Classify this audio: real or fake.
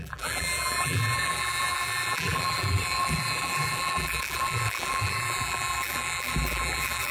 fake